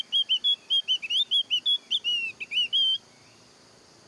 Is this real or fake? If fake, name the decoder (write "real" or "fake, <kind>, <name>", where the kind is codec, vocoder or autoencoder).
real